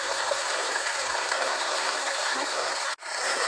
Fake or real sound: fake